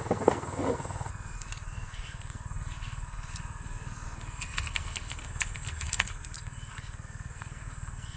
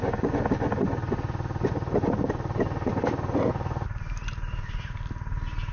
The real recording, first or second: second